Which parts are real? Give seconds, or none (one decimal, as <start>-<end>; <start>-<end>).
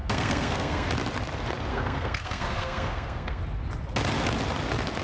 0.9-1.7; 3.4-5.0